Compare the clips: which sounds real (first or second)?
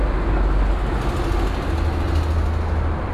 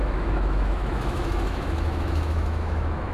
first